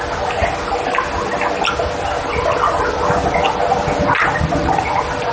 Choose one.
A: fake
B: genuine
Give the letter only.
A